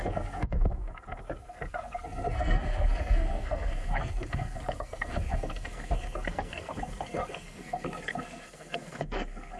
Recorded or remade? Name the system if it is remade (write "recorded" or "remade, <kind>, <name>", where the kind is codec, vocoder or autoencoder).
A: remade, codec, SNAC